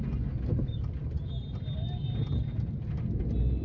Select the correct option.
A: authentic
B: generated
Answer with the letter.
A